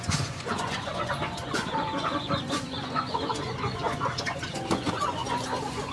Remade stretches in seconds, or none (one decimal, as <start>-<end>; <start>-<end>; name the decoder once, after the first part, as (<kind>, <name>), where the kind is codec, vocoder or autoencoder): 0.0-5.9 (vocoder, Vocos)